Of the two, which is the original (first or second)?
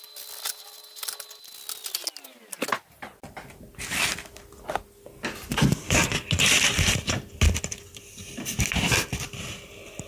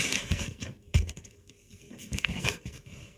first